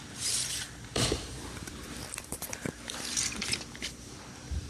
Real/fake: fake